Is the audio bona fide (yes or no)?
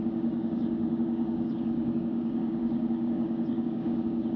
no